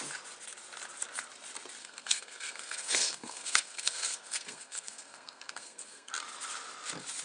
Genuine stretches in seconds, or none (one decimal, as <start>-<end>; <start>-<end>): 0.0-1.8; 6.1-7.2